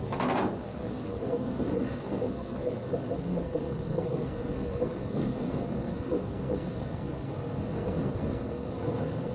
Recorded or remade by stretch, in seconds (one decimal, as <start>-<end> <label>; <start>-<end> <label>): 0.0-9.3 remade